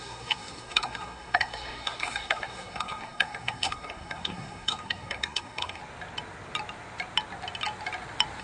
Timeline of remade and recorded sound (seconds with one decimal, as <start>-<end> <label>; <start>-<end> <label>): 0.0-5.8 remade; 5.8-8.4 recorded